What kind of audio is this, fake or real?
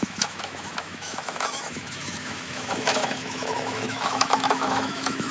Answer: fake